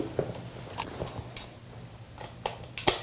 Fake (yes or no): no